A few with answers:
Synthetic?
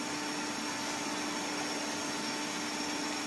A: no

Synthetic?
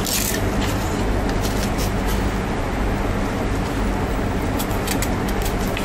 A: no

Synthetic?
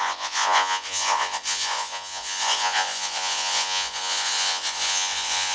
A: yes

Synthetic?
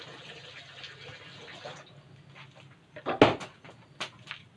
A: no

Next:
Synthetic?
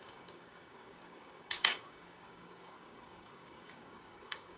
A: yes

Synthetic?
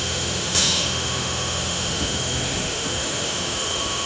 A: yes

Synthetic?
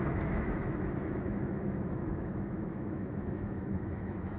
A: yes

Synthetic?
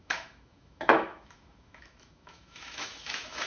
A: yes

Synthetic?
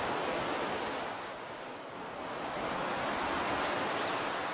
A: no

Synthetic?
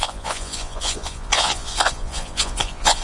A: yes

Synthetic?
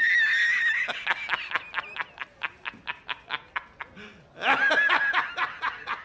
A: no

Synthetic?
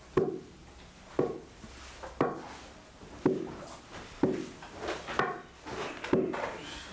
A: no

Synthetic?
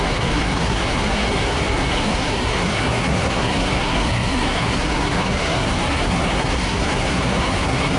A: yes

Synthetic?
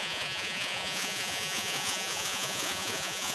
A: yes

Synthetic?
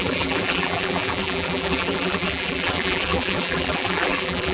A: yes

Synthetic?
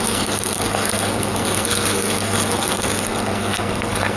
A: yes